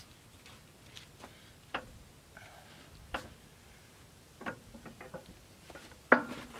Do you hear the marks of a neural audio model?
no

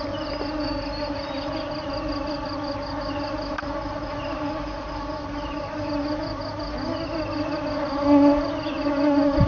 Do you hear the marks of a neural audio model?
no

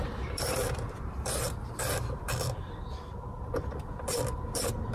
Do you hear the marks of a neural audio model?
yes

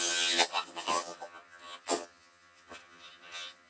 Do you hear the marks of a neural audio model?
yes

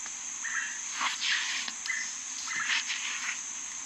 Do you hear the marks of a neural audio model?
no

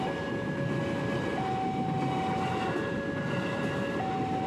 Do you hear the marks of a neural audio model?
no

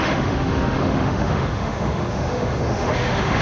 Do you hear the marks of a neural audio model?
yes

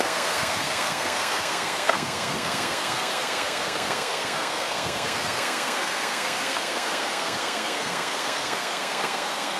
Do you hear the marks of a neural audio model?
yes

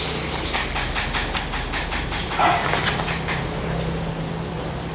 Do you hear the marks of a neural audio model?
no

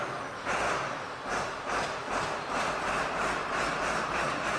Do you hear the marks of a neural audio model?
yes